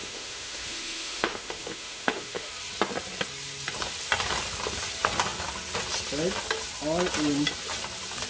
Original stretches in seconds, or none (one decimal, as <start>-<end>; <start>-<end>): 2.5-8.3